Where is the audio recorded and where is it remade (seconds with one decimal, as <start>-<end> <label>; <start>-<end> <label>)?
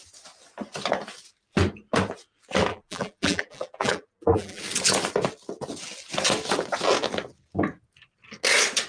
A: 0.0-2.7 recorded; 2.7-4.6 remade; 4.6-8.9 recorded